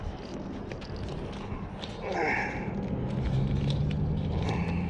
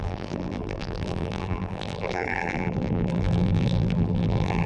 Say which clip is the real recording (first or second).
first